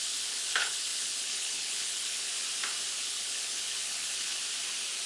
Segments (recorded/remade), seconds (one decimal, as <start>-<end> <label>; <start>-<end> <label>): 0.0-2.3 remade; 2.3-3.0 recorded; 3.0-4.4 remade; 4.4-5.1 recorded